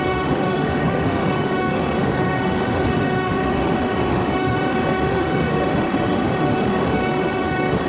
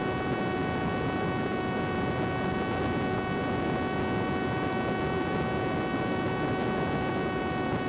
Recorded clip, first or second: second